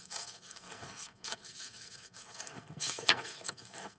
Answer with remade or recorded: remade